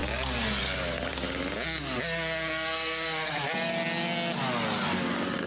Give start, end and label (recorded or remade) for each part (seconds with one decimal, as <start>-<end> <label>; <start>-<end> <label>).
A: 0.0-5.5 recorded